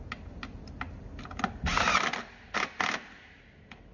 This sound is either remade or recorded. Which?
recorded